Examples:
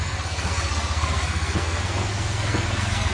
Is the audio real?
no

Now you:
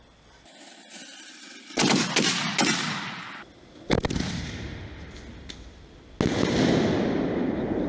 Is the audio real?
yes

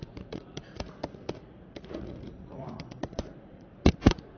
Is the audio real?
no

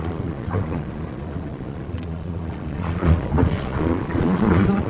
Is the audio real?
no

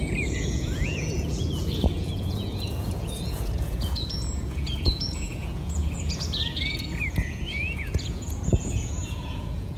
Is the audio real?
no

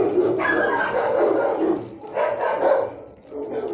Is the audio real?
yes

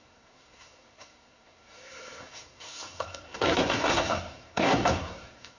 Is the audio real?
no